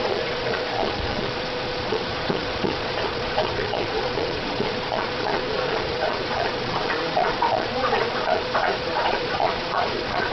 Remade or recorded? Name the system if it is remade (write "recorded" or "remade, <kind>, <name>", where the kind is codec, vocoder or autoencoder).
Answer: remade, vocoder, Vocos